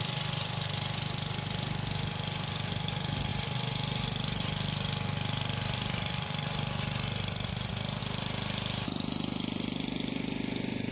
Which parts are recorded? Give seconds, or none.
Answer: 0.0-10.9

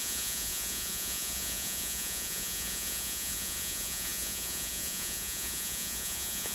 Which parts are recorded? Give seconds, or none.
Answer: none

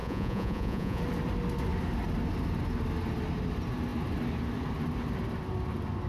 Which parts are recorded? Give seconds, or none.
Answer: 1.0-6.1

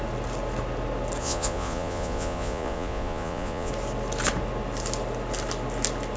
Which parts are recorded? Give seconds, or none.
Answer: 0.0-1.2; 3.7-6.2

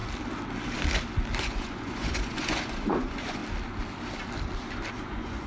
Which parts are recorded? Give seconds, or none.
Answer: 0.0-1.4; 3.4-4.9